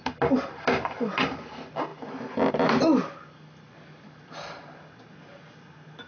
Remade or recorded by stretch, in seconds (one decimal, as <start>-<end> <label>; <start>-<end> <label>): 0.0-6.1 recorded